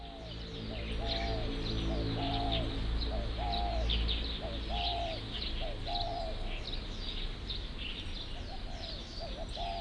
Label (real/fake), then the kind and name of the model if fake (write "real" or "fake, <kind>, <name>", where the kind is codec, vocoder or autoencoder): real